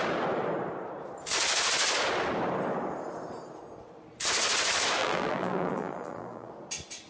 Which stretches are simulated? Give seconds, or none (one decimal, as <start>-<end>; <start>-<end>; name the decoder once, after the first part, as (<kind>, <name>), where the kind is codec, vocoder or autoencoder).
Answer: 5.0-6.5 (vocoder, BigVGAN v2)